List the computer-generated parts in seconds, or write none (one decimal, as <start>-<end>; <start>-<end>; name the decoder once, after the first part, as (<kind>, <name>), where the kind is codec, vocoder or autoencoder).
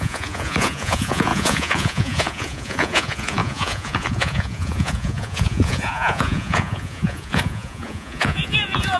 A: 0.0-9.0 (vocoder, Vocos)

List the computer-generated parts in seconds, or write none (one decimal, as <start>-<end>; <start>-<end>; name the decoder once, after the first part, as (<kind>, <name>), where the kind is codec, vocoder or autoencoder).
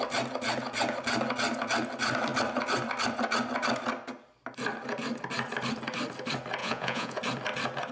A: 6.6-7.2 (vocoder, Vocos)